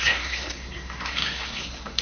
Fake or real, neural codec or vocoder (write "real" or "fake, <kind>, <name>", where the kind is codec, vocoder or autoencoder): fake, codec, SNAC